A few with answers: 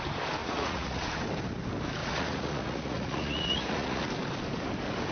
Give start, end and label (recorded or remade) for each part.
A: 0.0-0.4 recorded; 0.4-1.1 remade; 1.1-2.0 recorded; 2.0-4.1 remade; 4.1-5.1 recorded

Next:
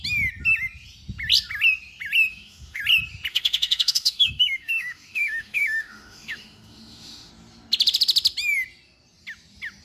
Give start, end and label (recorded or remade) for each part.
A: 0.0-2.3 recorded; 2.3-2.8 remade; 2.8-3.3 recorded; 3.3-7.3 remade; 7.3-9.8 recorded